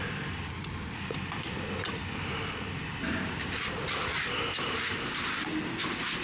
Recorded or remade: recorded